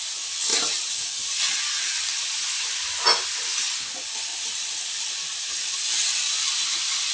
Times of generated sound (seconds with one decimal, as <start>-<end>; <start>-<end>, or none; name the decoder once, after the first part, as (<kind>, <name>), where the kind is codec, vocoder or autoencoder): none